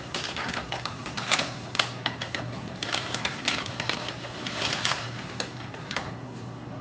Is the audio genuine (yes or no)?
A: no